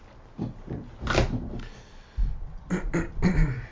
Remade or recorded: recorded